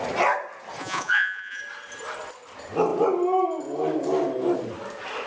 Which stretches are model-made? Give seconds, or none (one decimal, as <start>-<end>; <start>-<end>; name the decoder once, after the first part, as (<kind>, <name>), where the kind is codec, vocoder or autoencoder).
0.8-1.6 (vocoder, Vocos)